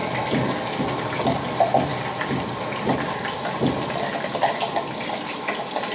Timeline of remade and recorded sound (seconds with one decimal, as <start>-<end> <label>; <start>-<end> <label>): 0.0-5.9 recorded